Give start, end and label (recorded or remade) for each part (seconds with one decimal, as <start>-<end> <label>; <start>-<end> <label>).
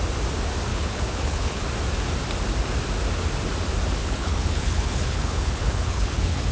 0.0-0.7 recorded; 0.7-1.6 remade; 1.6-4.0 recorded; 4.0-6.5 remade